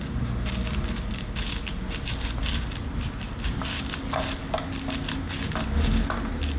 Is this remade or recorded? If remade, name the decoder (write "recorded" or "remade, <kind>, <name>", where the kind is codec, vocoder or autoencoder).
recorded